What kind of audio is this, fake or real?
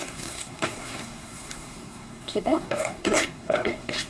fake